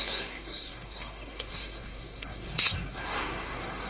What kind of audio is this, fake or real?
fake